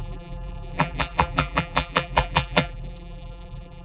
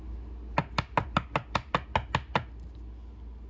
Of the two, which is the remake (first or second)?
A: first